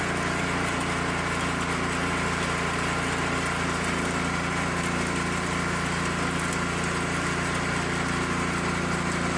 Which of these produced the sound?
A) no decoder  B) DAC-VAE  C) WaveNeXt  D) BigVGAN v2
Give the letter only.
A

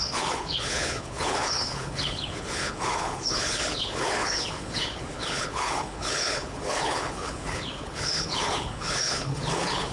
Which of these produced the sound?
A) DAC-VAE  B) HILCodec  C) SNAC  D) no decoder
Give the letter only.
B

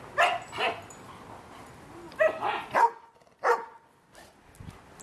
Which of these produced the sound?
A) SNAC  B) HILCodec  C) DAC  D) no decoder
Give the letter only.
D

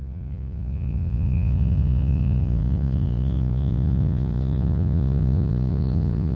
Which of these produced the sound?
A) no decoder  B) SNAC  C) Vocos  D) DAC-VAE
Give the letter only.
C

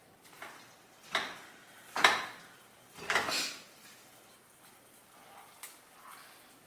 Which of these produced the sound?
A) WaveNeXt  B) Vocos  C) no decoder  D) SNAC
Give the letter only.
C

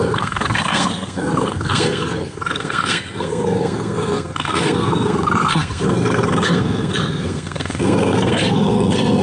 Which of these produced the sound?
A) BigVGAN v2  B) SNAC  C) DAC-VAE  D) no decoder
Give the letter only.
B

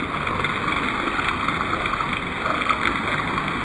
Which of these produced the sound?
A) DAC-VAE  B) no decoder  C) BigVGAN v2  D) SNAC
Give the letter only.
B